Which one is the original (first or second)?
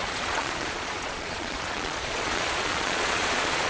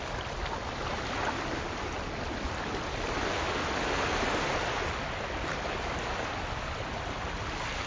second